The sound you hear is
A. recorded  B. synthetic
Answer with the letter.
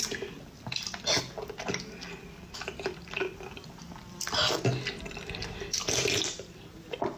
A